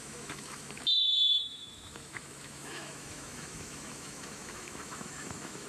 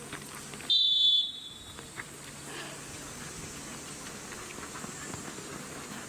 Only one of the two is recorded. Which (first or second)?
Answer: second